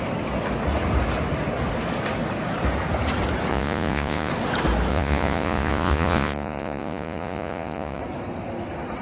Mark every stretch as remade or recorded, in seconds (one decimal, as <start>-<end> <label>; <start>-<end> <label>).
0.0-3.5 recorded; 3.5-4.3 remade; 4.3-4.9 recorded; 4.9-8.0 remade; 8.0-9.0 recorded